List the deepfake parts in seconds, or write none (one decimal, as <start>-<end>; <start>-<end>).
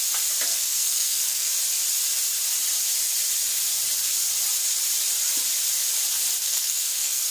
0.5-1.5; 6.4-7.3